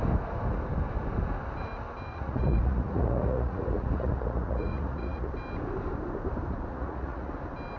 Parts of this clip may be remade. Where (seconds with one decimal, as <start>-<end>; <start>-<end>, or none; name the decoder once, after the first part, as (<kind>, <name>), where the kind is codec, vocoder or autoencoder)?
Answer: 2.1-5.3 (vocoder, Vocos); 6.7-7.3